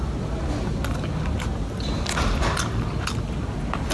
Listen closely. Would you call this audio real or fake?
real